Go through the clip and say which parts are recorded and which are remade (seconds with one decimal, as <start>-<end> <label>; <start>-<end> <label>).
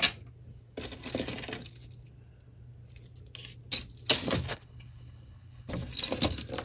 0.0-4.5 recorded; 4.5-5.7 remade; 5.7-6.6 recorded